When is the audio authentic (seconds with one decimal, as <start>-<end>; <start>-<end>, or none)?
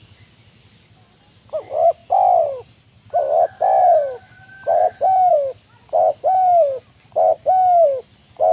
0.0-8.5